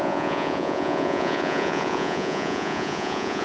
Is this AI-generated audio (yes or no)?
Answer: yes